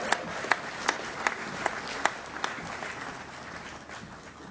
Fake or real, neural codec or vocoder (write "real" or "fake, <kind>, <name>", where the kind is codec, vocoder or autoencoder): real